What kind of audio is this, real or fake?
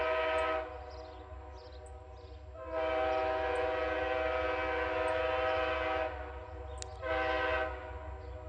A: real